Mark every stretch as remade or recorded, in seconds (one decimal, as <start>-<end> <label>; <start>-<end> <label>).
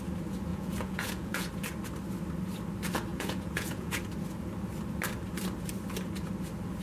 0.0-0.5 recorded; 0.5-1.5 remade; 1.5-3.1 recorded; 3.1-4.0 remade; 4.0-6.8 recorded